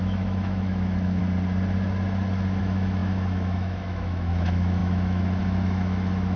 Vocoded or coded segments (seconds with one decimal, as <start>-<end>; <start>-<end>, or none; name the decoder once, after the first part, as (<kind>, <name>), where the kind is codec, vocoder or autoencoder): 0.0-1.2 (autoencoder, DAC-VAE); 2.6-6.4